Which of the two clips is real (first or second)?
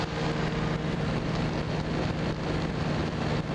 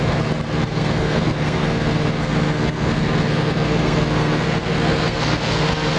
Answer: first